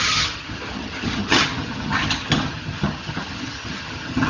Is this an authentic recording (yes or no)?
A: no